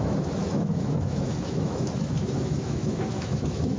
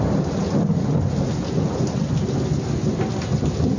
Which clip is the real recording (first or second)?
second